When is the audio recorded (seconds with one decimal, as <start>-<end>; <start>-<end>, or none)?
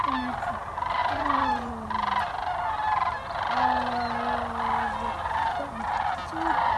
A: 0.0-1.0; 1.7-6.8